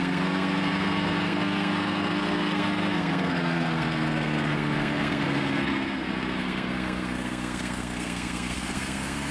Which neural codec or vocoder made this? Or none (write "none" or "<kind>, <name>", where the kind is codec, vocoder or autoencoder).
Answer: codec, SNAC